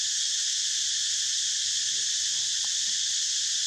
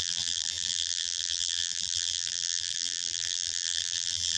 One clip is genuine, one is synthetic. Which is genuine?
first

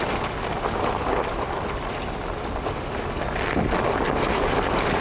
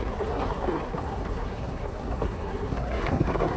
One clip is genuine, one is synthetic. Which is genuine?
first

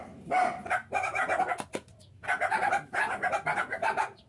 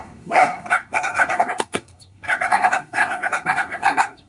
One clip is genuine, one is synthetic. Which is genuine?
first